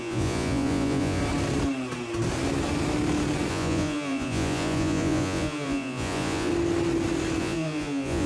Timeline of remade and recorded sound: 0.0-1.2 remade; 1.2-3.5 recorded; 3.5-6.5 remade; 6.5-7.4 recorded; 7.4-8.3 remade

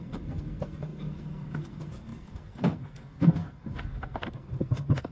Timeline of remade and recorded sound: 0.0-5.1 remade

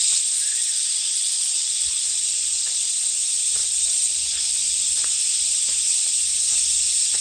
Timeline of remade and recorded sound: 0.0-0.5 recorded; 0.5-2.9 remade; 2.9-3.6 recorded; 3.6-4.4 remade; 4.4-7.2 recorded

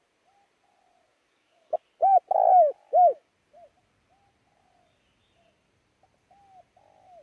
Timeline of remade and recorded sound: 0.0-1.1 recorded; 1.1-1.8 remade; 1.8-2.8 recorded; 2.8-3.3 remade; 3.3-7.2 recorded

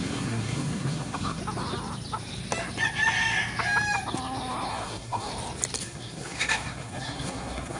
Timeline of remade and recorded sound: 0.0-1.4 remade; 1.4-4.7 recorded; 4.7-5.3 remade; 5.3-5.8 recorded; 5.8-7.8 remade

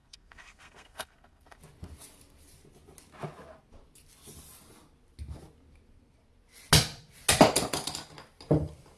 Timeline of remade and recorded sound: 0.0-1.6 remade; 1.6-9.0 recorded